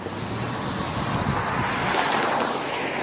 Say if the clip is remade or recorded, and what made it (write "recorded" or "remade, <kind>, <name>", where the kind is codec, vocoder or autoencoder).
recorded